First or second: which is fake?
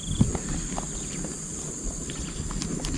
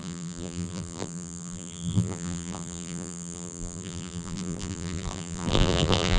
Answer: second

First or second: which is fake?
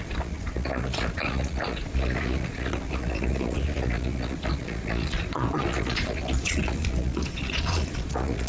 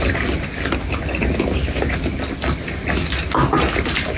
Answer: first